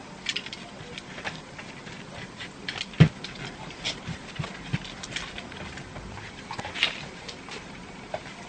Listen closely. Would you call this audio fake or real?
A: real